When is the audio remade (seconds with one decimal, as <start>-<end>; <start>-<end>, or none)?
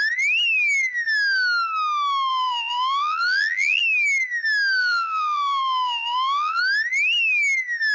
2.3-3.8; 4.8-6.6